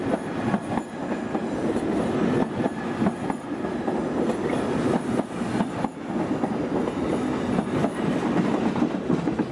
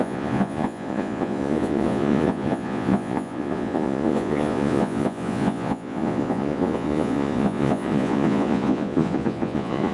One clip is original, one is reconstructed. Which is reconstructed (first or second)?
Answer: second